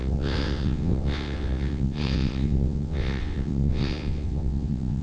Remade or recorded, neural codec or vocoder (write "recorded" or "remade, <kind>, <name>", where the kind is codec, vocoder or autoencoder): remade, vocoder, WaveNeXt